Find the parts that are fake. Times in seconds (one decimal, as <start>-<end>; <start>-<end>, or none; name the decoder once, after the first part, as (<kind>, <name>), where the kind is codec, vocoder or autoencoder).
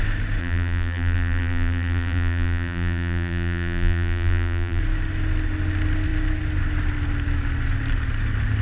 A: 0.4-4.8 (vocoder, BigVGAN v2)